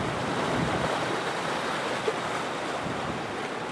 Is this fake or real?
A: real